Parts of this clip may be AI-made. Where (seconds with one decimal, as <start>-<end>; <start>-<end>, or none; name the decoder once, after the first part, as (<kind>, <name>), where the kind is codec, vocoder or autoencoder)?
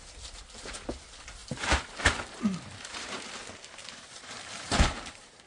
1.4-3.2 (vocoder, BigVGAN v2); 3.8-5.5